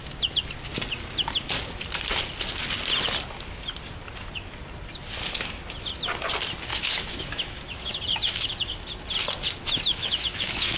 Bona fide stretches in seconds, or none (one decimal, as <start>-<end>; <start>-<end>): 0.0-6.7; 7.4-9.9